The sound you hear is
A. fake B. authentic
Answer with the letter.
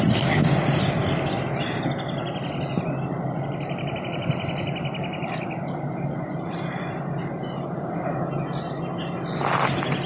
B